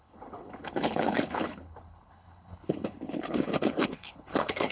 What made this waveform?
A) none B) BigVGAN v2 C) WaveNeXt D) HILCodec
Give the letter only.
D